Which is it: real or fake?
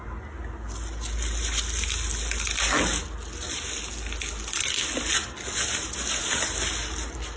real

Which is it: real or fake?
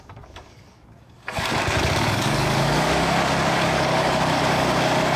fake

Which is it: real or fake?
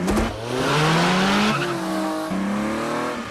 real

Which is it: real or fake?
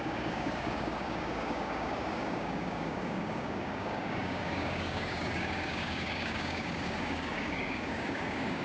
fake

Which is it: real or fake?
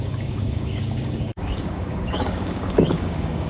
fake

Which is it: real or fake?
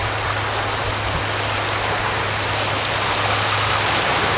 real